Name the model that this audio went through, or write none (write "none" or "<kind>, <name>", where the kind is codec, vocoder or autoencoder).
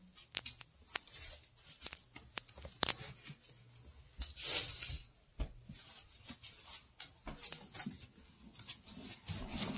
none